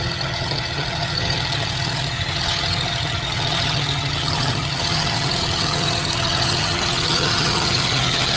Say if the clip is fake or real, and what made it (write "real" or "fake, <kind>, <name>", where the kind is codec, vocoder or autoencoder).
fake, vocoder, HiFi-GAN